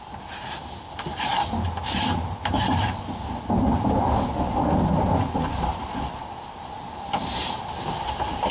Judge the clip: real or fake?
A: real